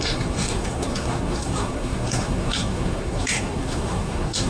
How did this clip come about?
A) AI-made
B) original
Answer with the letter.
A